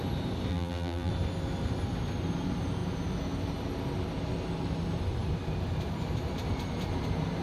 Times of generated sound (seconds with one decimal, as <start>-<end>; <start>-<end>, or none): 0.5-1.1